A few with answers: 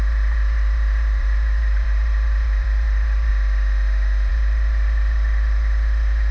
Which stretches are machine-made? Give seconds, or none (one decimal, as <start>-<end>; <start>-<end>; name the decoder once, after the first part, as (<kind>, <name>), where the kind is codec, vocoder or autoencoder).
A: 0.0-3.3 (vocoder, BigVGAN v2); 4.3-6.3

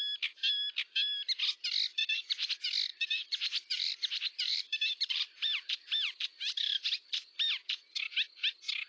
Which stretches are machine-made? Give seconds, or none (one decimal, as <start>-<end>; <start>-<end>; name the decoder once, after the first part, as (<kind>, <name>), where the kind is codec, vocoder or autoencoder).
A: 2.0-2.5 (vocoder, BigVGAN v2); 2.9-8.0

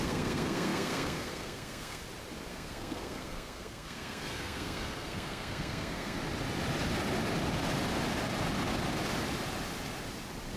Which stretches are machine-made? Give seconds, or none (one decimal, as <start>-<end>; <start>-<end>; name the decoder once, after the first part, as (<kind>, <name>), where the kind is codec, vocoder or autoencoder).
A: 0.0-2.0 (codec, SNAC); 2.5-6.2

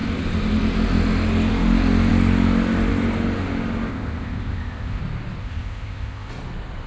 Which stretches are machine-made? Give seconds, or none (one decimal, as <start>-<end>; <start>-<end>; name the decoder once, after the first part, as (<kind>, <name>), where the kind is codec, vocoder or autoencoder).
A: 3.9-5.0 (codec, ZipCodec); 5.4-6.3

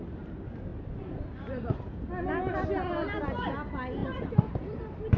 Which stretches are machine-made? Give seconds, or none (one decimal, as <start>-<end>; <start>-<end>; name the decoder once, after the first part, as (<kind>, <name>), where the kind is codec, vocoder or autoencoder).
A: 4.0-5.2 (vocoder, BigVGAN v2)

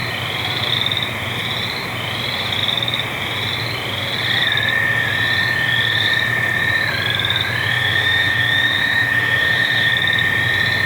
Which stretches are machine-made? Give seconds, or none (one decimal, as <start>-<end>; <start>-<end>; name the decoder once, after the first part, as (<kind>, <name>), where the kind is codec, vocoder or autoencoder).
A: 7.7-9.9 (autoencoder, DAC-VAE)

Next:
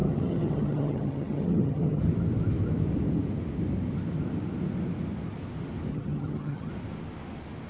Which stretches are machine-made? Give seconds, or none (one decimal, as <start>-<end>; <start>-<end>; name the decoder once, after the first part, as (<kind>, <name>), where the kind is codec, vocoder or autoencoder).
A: 0.0-2.0 (vocoder, HiFi-GAN); 5.9-6.7